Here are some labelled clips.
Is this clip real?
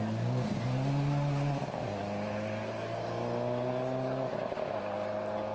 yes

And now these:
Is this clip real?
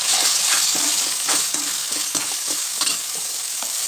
no